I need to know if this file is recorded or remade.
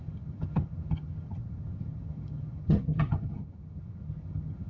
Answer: remade